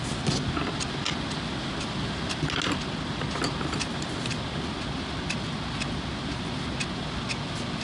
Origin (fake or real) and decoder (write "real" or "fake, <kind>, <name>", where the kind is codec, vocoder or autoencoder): real